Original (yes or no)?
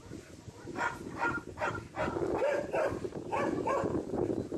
yes